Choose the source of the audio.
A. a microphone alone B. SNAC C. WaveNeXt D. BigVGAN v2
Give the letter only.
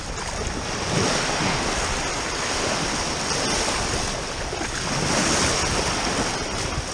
A